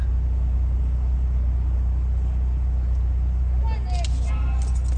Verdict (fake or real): real